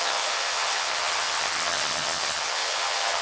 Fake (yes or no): yes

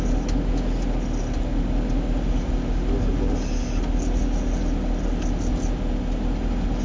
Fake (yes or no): no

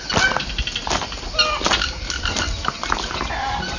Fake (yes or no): no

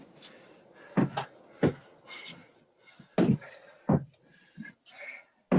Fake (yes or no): no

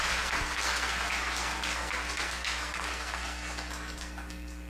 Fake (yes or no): yes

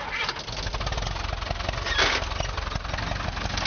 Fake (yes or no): no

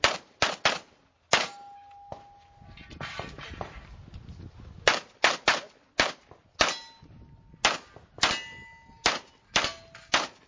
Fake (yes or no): no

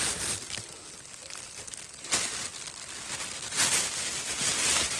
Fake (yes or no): no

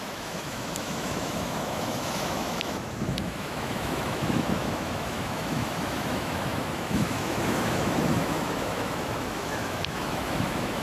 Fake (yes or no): yes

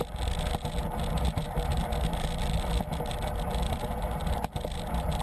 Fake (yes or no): no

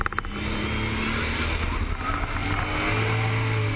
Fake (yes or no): no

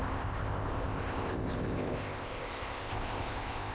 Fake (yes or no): yes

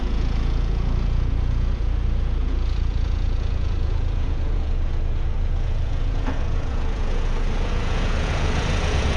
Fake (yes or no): yes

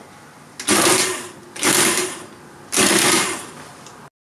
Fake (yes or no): no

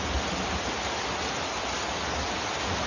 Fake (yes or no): no